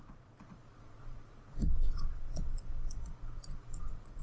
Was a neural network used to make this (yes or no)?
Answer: yes